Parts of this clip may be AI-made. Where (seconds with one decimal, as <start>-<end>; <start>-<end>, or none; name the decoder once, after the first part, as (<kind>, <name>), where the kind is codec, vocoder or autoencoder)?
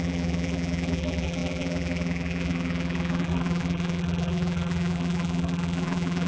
0.0-6.3 (vocoder, BigVGAN v2)